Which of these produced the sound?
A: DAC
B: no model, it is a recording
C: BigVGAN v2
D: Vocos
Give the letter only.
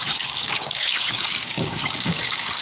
A